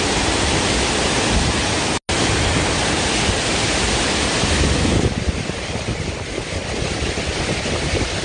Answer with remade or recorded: recorded